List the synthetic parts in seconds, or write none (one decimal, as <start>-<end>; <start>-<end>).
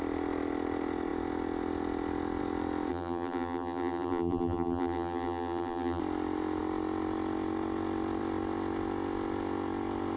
2.9-6.0